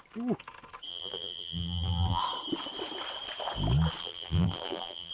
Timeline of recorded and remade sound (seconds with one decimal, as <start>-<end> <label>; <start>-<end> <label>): 0.0-0.9 recorded; 0.9-2.2 remade; 2.2-4.0 recorded; 4.0-5.1 remade